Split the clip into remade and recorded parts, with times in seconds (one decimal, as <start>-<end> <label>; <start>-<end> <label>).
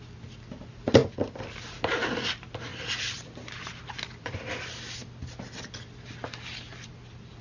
0.0-2.7 recorded; 2.7-4.2 remade; 4.2-7.4 recorded